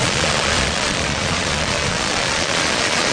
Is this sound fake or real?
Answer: fake